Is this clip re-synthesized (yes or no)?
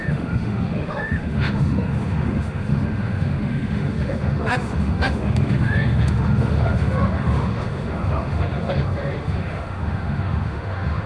yes